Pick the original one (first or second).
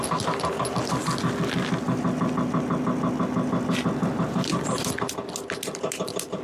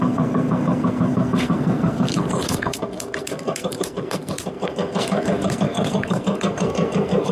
first